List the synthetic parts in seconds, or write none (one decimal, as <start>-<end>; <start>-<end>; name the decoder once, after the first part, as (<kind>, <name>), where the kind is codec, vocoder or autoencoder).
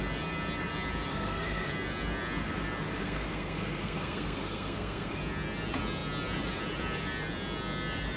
1.1-1.7 (codec, SNAC); 3.0-5.2